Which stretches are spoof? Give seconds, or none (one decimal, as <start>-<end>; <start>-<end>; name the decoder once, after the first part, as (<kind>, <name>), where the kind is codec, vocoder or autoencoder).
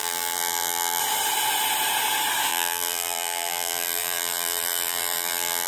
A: 0.0-1.0 (vocoder, BigVGAN v2); 2.5-5.7